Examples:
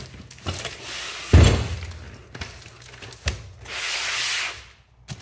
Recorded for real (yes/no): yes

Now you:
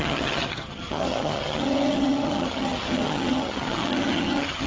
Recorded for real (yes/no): no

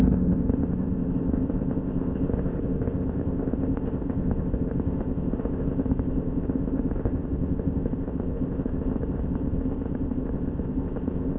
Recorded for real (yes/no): no